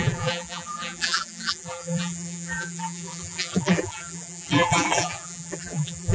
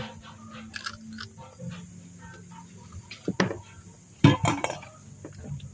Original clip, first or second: second